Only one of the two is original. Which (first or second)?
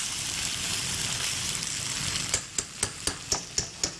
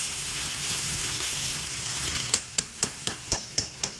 first